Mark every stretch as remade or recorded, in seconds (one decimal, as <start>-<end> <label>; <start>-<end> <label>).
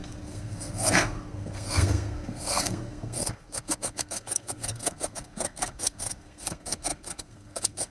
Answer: 0.0-7.9 remade